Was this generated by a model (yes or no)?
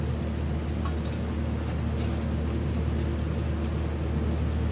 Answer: no